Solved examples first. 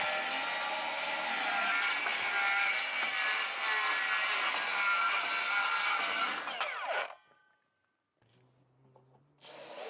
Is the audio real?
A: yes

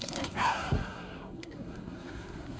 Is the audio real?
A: no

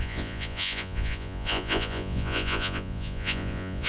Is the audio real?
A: no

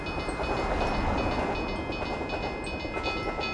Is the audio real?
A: yes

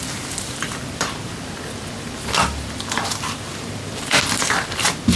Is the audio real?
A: no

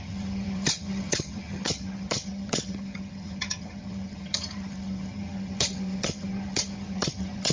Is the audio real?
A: no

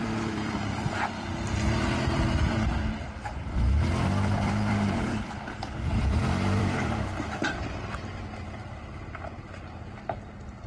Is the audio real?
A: no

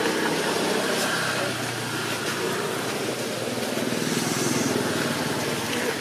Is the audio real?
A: yes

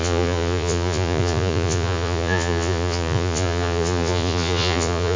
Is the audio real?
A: no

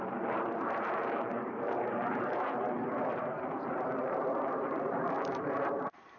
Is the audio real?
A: no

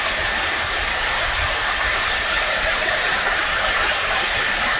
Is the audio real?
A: no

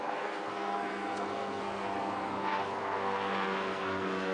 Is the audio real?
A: no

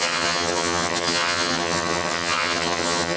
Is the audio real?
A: no